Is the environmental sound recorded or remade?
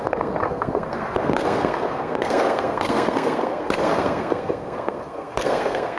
remade